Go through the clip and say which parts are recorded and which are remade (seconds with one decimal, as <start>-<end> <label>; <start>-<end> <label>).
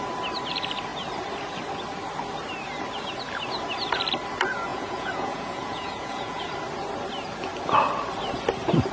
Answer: 0.0-4.7 recorded; 4.7-6.4 remade; 6.4-8.9 recorded